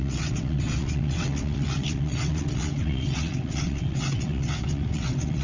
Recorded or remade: remade